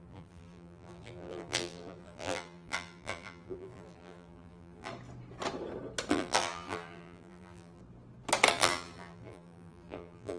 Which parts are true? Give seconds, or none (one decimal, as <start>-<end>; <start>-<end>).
4.9-6.1; 7.8-8.5